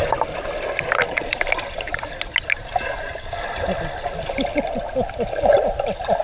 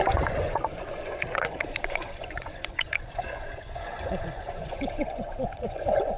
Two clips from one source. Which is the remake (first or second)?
second